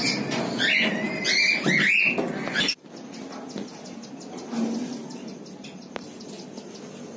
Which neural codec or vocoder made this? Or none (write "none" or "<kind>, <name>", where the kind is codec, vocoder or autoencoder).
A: none